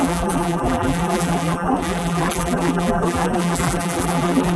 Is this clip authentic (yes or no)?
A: no